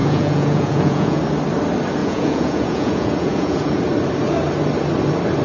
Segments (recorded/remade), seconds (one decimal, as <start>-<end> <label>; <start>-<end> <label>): 0.0-1.2 remade; 1.2-2.0 recorded; 2.0-3.8 remade; 3.8-5.4 recorded